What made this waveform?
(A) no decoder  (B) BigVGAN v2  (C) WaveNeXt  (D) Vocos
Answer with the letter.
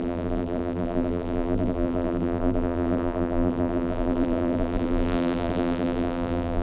B